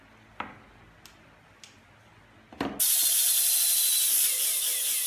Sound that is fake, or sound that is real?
real